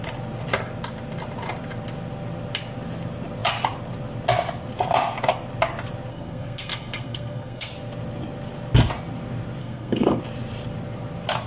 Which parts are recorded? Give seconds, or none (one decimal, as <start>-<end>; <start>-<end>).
0.0-6.1; 7.7-9.6; 10.2-11.5